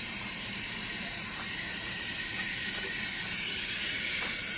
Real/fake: fake